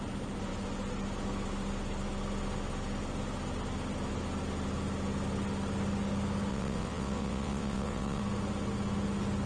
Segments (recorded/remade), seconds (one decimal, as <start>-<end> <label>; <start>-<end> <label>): 0.0-6.5 recorded; 6.5-8.2 remade; 8.2-9.5 recorded